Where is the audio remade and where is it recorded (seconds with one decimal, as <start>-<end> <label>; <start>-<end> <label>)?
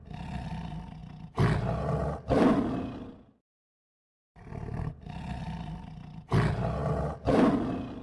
0.0-8.0 recorded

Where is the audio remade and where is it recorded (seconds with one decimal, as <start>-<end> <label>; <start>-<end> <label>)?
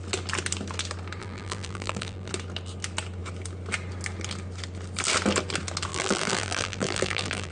0.0-1.2 recorded; 1.2-2.3 remade; 2.3-5.9 recorded; 5.9-7.5 remade